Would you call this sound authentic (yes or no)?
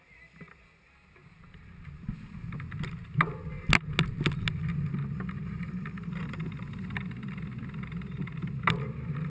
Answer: yes